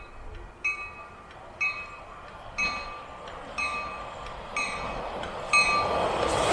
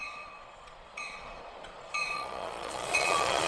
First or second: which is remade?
second